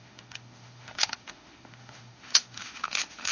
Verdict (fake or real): fake